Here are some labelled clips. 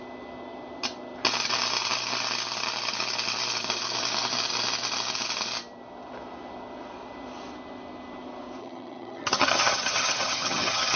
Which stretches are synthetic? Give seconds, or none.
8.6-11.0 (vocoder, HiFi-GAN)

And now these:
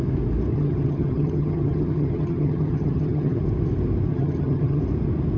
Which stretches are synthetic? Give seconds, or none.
0.5-3.4 (vocoder, HiFi-GAN); 4.1-4.8

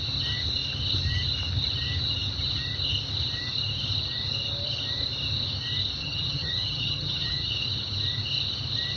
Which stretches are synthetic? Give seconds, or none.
6.0-7.5 (vocoder, HiFi-GAN)

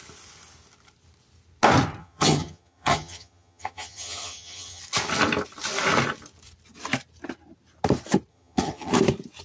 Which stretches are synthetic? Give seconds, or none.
2.0-4.8 (vocoder, HiFi-GAN); 8.3-8.9